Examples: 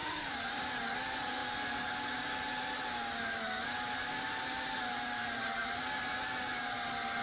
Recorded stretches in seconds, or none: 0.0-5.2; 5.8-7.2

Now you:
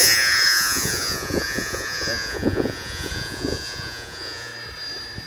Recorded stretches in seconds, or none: 4.5-5.3

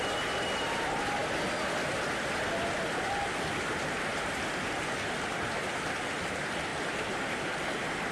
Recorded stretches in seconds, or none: 0.0-8.1

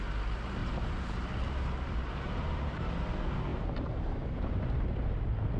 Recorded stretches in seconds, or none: 0.0-0.6; 2.8-3.5; 5.0-5.6

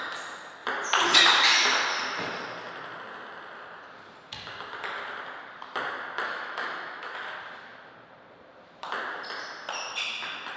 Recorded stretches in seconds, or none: 0.0-6.3; 7.1-10.6

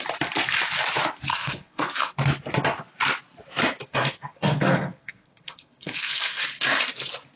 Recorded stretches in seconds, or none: 0.0-1.3; 2.1-3.9; 6.4-7.4

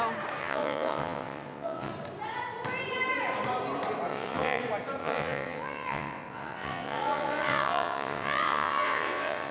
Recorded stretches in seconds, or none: 0.0-0.4; 1.9-4.1; 4.6-5.0

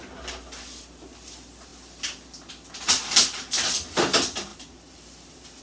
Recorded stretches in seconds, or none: 0.0-4.5